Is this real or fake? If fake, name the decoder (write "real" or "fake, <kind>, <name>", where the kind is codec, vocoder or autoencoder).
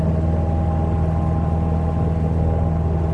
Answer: real